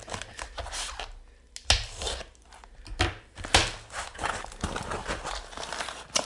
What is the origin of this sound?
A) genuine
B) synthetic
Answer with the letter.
A